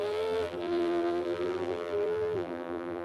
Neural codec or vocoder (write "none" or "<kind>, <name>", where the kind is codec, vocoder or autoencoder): vocoder, BigVGAN v2